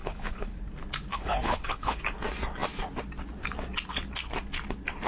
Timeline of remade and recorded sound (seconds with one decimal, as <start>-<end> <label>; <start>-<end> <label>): 0.0-0.6 remade; 0.6-1.1 recorded; 1.1-2.0 remade; 2.0-5.1 recorded

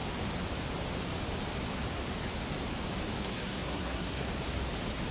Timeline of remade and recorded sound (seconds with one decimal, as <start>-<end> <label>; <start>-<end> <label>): 0.0-3.3 recorded; 3.3-4.3 remade; 4.3-5.1 recorded

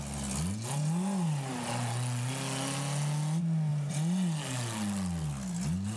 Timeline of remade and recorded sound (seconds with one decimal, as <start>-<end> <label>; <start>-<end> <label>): 0.0-6.0 recorded

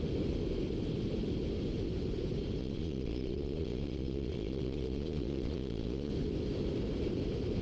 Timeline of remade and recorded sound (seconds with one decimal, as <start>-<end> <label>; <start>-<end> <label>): 0.0-2.6 recorded; 2.6-6.1 remade; 6.1-7.6 recorded

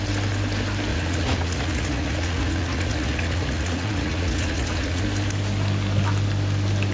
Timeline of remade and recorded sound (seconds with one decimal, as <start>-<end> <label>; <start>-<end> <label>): 0.0-0.9 recorded; 0.9-5.0 remade; 5.0-6.9 recorded

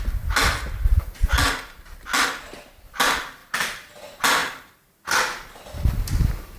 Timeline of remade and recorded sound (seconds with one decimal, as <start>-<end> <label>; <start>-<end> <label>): 0.0-6.6 recorded

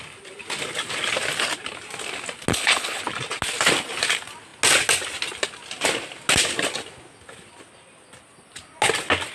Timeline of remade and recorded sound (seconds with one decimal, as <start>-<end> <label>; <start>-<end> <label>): 0.0-2.5 recorded; 2.5-3.0 remade; 3.0-9.3 recorded

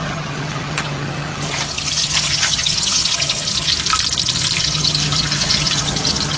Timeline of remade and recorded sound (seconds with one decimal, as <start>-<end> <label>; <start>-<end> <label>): 0.0-3.7 remade; 3.7-4.6 recorded; 4.6-6.4 remade